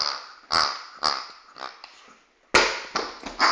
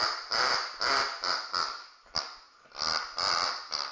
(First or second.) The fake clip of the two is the second